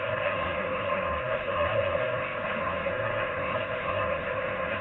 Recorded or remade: remade